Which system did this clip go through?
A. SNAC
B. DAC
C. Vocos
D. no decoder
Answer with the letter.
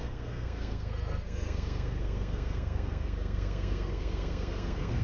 A